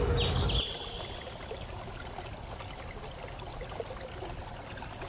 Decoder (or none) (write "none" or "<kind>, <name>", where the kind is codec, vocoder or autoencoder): none